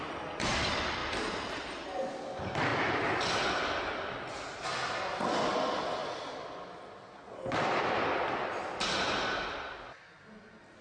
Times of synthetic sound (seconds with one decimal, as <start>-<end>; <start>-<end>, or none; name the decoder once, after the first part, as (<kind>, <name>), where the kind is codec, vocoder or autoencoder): none